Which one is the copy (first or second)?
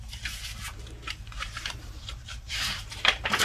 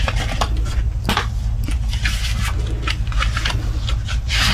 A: first